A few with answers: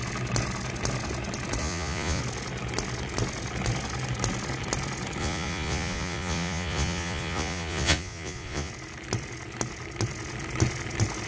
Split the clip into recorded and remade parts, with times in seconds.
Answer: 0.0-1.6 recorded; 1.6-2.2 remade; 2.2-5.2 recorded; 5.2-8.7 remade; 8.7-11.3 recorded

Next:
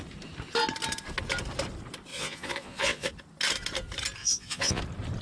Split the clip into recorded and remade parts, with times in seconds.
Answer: 0.0-2.1 recorded; 2.1-3.1 remade; 3.1-4.2 recorded; 4.2-4.8 remade; 4.8-5.2 recorded

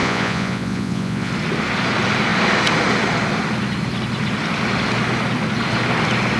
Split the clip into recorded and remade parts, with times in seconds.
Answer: 0.0-1.3 remade; 1.3-6.4 recorded

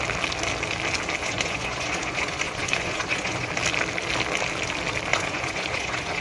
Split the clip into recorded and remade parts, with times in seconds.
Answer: 0.0-1.2 recorded; 1.2-3.5 remade; 3.5-5.1 recorded; 5.1-6.2 remade

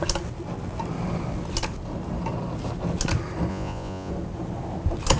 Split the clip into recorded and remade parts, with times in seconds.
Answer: 0.0-3.5 recorded; 3.5-4.1 remade; 4.1-5.2 recorded

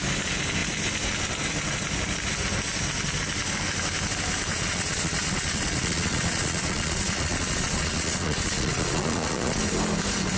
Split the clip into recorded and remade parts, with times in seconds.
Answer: 0.0-4.5 recorded; 4.5-9.6 remade; 9.6-10.4 recorded

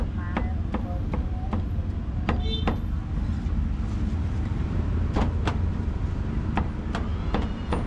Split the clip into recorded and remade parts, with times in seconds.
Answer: 0.0-7.1 recorded; 7.1-7.9 remade